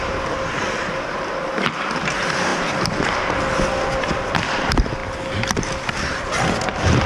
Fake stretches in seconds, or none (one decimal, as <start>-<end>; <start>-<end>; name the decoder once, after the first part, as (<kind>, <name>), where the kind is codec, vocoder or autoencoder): none